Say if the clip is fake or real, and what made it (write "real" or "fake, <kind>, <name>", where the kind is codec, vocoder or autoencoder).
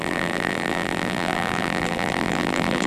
fake, vocoder, BigVGAN v2